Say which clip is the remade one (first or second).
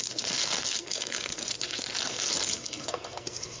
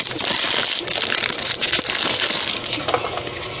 first